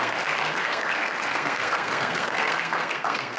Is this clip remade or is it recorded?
remade